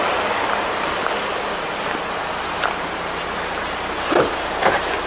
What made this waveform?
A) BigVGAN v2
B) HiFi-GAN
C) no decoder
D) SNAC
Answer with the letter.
C